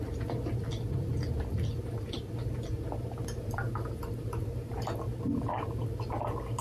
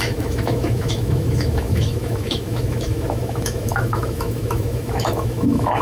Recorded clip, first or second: first